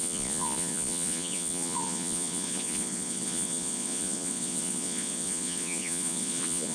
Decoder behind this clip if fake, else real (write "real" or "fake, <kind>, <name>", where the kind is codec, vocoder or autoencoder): fake, vocoder, Vocos